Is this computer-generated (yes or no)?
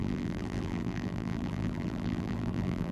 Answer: yes